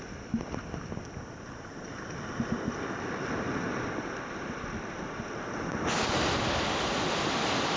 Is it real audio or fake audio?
real